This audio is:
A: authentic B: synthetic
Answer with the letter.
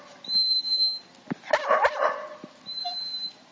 A